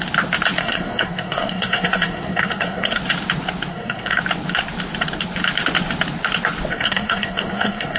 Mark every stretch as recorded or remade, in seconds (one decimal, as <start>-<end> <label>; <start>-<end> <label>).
0.0-0.6 recorded; 0.6-3.0 remade; 3.0-3.7 recorded; 3.7-4.2 remade; 4.2-6.7 recorded; 6.7-8.0 remade

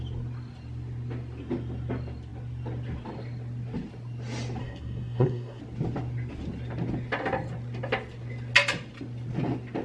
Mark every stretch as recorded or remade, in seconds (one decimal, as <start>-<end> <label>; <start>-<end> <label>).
0.0-4.6 recorded; 4.6-5.6 remade; 5.6-9.8 recorded

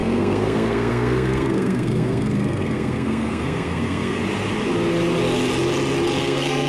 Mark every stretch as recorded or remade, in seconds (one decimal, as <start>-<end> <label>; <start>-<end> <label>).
0.0-4.2 remade; 4.2-6.2 recorded; 6.2-6.7 remade

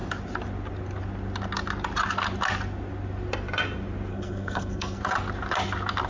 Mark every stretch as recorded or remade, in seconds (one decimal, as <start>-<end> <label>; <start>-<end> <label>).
0.0-4.1 recorded; 4.1-5.0 remade; 5.0-6.1 recorded

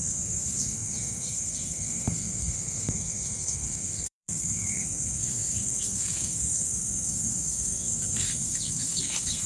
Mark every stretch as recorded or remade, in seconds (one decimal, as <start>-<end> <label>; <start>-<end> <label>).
0.0-9.5 remade